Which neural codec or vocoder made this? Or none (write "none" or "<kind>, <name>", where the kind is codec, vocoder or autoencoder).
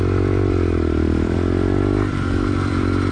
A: vocoder, BigVGAN v2